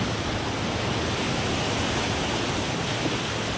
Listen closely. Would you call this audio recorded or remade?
recorded